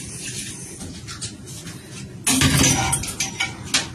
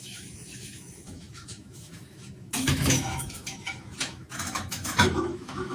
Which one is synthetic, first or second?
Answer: second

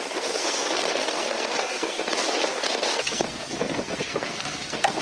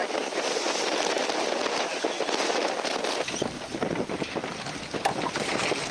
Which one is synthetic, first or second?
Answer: first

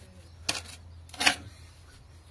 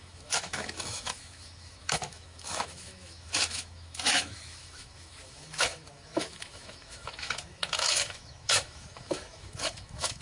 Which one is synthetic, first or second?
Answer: second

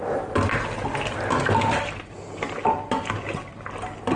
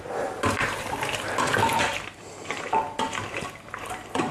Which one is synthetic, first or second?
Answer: second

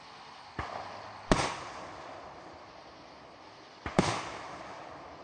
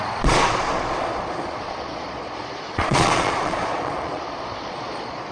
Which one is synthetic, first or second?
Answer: second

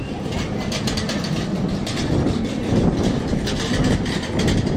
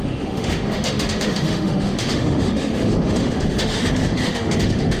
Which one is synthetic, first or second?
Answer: second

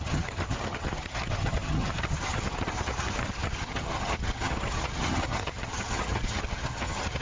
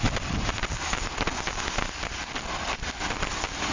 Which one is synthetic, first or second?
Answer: first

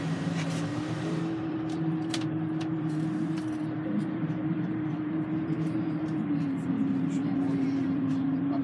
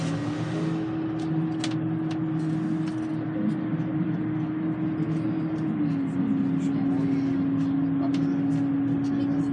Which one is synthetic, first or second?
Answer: first